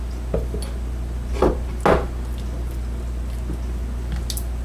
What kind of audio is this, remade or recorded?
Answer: recorded